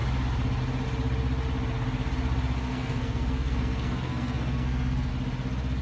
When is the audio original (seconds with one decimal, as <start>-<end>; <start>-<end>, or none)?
0.0-2.7; 5.1-5.8

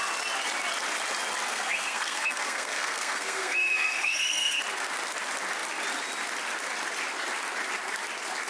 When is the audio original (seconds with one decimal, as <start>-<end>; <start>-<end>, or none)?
0.0-1.5; 4.6-8.5

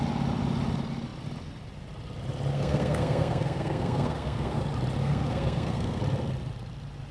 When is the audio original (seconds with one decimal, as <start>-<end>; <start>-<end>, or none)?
0.0-2.5; 4.6-5.0; 6.0-7.1